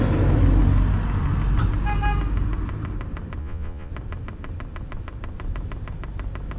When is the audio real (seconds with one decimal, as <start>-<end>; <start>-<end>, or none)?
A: 0.0-3.4; 3.9-6.6